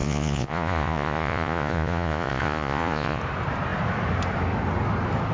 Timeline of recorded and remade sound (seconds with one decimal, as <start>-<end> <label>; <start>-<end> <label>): 0.0-3.2 remade; 3.2-5.3 recorded